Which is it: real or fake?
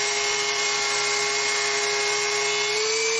real